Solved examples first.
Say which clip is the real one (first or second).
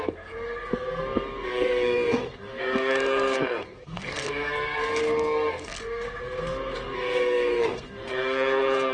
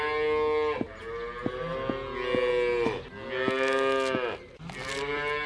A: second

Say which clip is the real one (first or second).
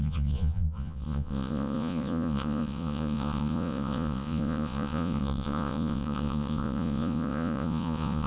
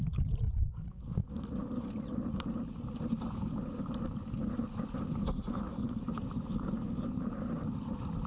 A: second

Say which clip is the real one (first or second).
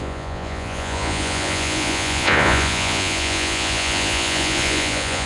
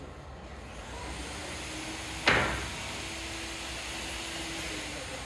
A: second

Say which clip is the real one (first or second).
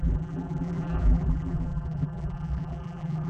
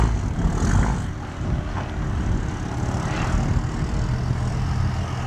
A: second